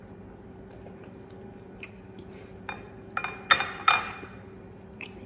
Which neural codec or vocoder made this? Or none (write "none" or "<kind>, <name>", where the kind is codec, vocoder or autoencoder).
none